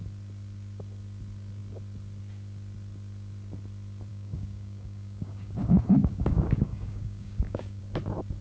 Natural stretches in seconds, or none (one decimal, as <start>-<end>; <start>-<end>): 0.0-4.1; 7.8-8.4